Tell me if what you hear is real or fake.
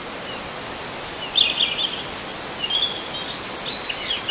real